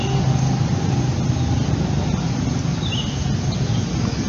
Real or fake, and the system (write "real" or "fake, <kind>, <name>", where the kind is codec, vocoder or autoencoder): real